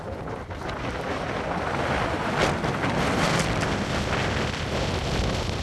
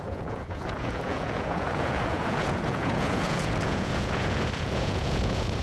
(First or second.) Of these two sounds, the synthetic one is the second